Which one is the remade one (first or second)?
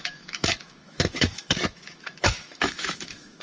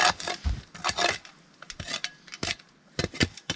first